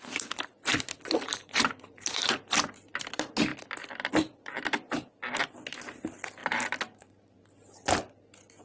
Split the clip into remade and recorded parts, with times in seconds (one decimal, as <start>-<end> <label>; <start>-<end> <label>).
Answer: 0.0-1.3 recorded; 1.3-2.3 remade; 2.3-6.4 recorded; 6.4-7.4 remade; 7.4-8.6 recorded